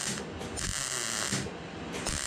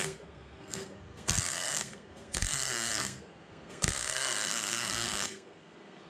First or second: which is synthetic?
second